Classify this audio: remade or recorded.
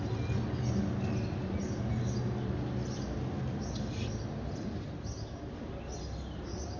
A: recorded